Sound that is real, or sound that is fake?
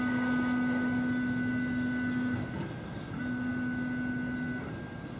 real